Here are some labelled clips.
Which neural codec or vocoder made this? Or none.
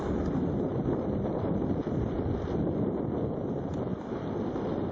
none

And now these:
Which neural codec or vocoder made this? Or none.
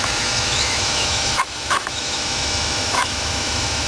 autoencoder, DAC-VAE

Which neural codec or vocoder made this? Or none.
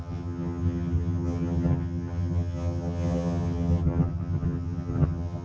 vocoder, HiFi-GAN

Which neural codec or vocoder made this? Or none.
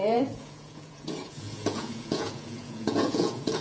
vocoder, Vocos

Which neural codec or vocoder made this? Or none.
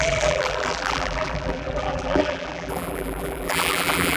vocoder, BigVGAN v2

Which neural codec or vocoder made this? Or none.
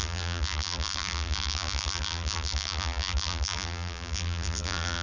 vocoder, BigVGAN v2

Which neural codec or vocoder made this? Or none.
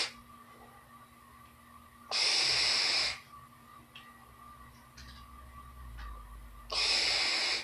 none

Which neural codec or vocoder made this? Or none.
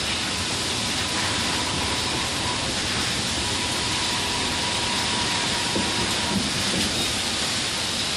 none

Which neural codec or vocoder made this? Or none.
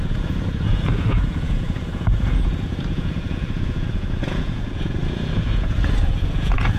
vocoder, Vocos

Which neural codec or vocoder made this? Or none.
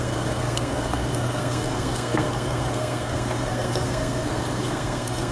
codec, SNAC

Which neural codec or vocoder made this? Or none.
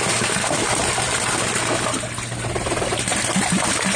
none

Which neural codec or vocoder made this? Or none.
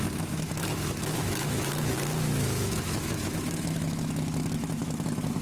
autoencoder, DAC-VAE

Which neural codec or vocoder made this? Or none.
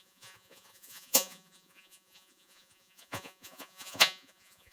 vocoder, Vocos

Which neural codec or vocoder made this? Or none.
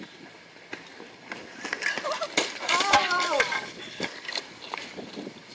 vocoder, BigVGAN v2